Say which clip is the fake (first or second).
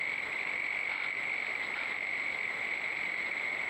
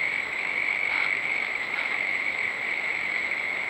second